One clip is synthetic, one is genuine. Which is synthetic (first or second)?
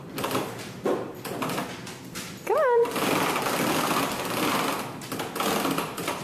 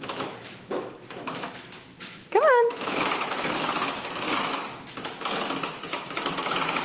second